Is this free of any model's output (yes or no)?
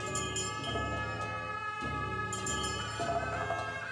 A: yes